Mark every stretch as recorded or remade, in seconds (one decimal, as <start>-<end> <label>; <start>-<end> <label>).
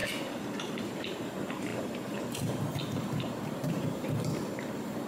0.0-0.7 recorded; 0.7-5.1 remade